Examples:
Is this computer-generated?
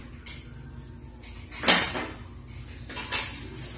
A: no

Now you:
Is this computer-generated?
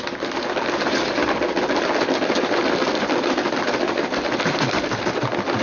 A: no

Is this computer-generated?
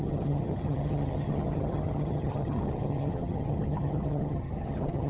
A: yes